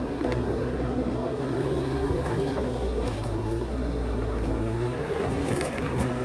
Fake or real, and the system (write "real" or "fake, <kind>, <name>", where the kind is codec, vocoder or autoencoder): fake, codec, SNAC